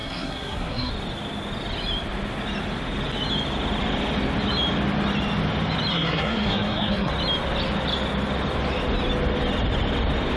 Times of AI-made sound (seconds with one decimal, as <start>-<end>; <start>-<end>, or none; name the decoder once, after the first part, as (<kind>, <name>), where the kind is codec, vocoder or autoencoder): 0.0-0.9 (codec, SNAC); 5.9-7.1